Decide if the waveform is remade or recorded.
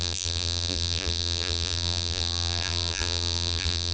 remade